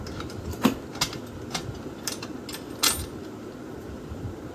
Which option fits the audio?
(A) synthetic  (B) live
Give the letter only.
B